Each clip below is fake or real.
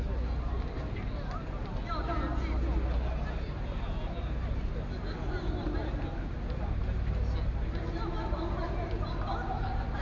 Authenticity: real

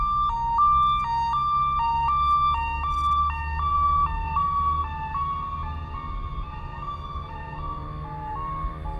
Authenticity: real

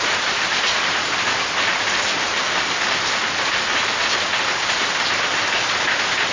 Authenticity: real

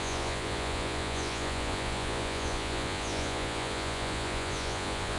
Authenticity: fake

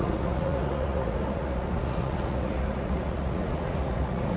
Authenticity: fake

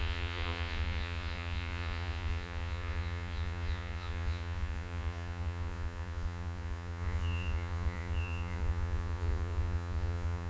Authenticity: fake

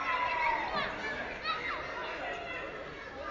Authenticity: real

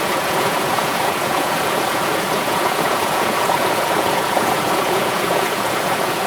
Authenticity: fake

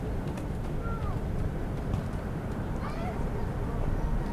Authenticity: real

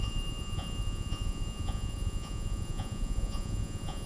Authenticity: fake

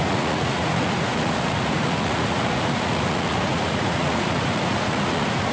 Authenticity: fake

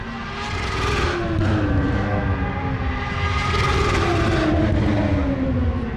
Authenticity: real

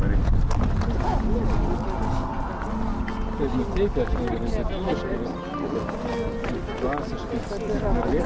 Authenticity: real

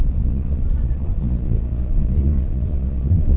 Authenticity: fake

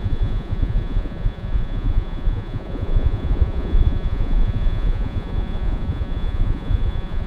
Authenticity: fake